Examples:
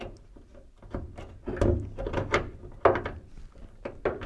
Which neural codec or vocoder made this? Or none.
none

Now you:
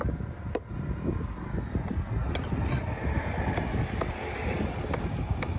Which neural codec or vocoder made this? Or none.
none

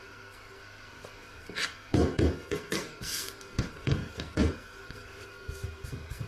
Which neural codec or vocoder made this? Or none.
codec, SNAC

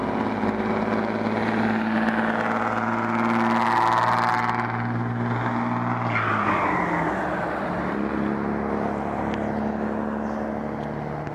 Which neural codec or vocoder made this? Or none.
none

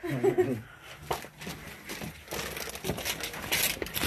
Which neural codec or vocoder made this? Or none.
none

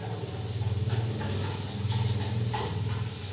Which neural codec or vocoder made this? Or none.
none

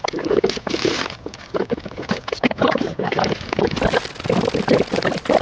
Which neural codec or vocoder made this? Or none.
none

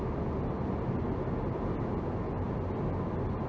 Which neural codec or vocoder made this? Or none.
none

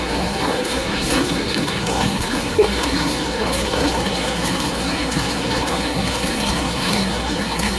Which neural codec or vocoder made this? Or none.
codec, SNAC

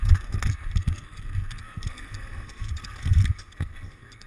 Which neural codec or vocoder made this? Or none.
codec, SNAC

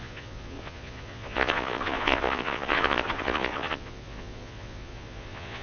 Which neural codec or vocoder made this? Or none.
vocoder, Vocos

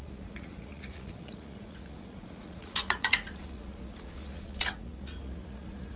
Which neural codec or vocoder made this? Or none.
vocoder, Vocos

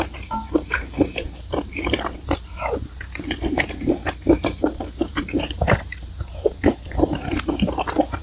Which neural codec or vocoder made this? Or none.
none